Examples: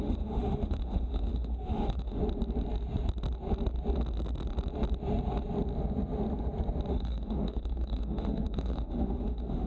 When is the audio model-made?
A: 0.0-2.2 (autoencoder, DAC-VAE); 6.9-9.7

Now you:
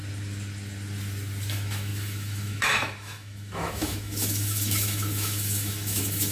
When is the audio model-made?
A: 1.5-6.3 (autoencoder, DAC-VAE)